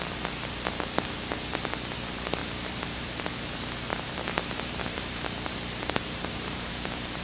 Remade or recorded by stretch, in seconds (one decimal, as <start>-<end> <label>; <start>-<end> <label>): 0.0-2.4 recorded; 2.4-3.3 remade; 3.3-3.9 recorded; 3.9-6.7 remade; 6.7-7.2 recorded